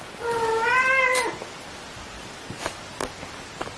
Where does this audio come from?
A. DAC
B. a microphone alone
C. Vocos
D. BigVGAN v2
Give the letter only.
B